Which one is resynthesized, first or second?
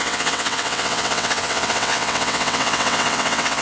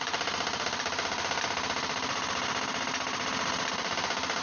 first